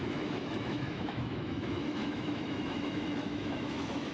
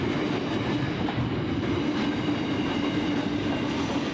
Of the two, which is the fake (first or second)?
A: first